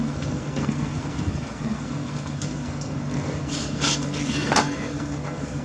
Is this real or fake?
fake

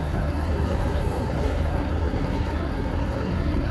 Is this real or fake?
fake